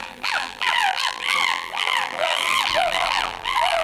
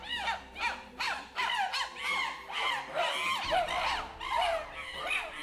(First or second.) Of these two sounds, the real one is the second